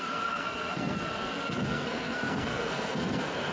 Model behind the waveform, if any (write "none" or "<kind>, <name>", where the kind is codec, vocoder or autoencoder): codec, SNAC